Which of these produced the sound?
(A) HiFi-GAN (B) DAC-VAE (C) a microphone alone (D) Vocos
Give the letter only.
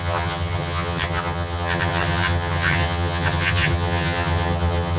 A